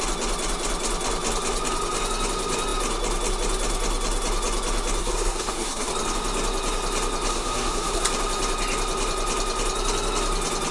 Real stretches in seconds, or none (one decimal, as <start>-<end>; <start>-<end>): 0.0-5.0; 5.9-7.3; 8.0-10.7